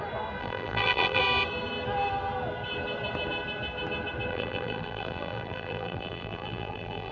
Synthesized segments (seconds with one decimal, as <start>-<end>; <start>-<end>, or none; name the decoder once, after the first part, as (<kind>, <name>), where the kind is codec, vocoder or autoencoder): 0.4-1.2 (vocoder, BigVGAN v2); 4.3-7.1